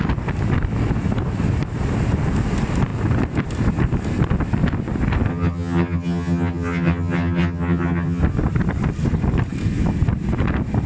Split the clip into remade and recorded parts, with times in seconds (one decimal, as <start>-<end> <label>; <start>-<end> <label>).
0.0-5.3 recorded; 5.3-8.2 remade; 8.2-10.9 recorded